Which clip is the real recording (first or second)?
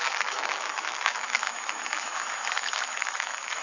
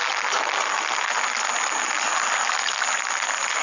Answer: second